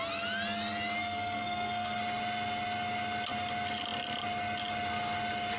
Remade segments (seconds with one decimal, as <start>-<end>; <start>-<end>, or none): 1.0-2.0